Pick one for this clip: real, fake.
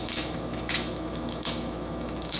fake